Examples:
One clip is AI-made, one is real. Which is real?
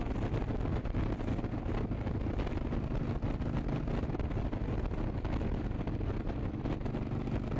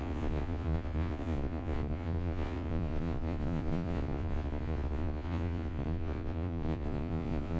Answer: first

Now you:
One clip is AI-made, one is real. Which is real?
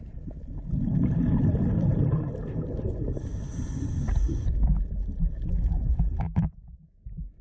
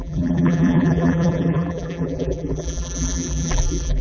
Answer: first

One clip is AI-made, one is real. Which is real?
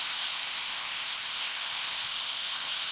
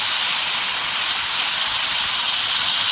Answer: second